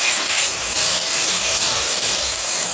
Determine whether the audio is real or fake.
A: fake